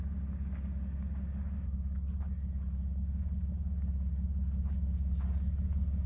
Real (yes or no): yes